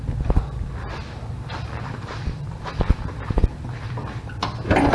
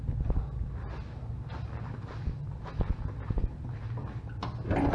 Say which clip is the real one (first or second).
second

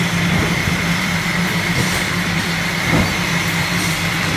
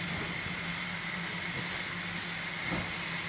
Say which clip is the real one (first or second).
second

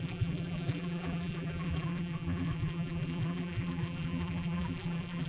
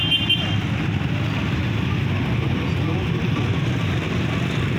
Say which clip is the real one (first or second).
second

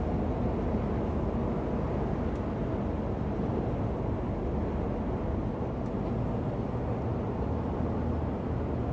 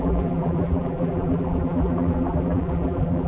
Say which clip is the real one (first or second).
first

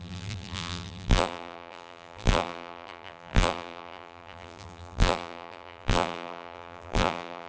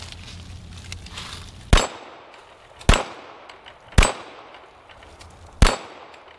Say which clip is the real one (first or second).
second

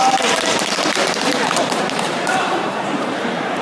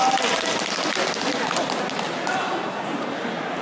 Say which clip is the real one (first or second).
second